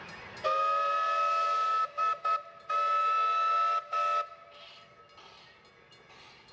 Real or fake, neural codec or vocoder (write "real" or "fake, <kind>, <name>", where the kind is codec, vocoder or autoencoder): real